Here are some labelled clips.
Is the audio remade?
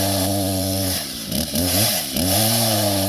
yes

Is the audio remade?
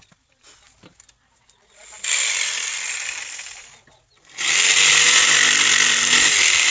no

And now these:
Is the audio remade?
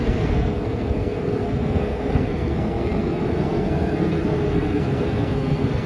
yes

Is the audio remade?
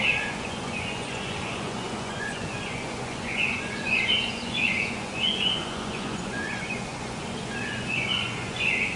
yes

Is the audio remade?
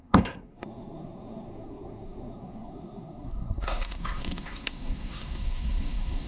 yes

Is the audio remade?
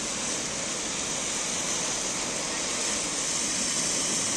no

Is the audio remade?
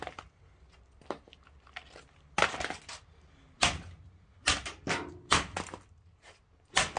no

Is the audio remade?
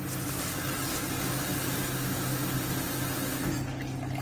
no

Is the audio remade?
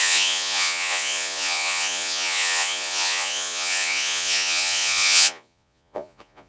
yes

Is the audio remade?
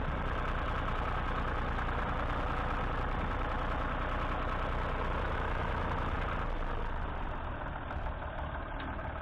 no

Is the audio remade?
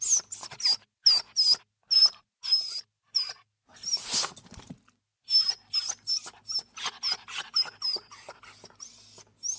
no